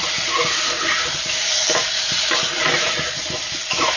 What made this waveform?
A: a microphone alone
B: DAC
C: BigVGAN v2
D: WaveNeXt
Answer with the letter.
A